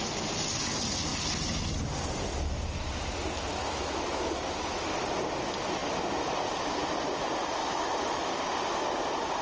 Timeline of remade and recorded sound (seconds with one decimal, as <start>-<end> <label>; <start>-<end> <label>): 0.0-3.5 recorded; 3.5-5.0 remade; 5.0-7.6 recorded; 7.6-8.3 remade; 8.3-9.4 recorded